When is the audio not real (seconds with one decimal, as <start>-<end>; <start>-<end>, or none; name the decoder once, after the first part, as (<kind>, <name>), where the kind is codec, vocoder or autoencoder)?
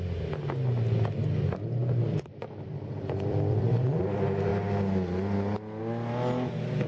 1.8-4.0 (vocoder, BigVGAN v2)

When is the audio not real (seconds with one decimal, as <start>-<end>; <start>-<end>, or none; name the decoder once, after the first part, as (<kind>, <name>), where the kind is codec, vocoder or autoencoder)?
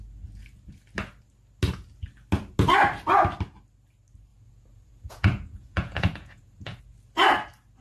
4.3-6.8 (vocoder, Vocos)